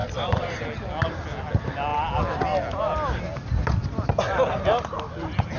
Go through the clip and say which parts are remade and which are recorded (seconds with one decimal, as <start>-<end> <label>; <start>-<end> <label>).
0.0-0.6 remade; 0.6-5.6 recorded